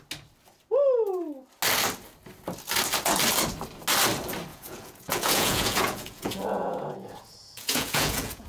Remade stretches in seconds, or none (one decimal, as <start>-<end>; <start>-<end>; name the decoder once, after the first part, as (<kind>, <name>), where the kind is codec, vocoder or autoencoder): 4.5-8.5 (vocoder, Vocos)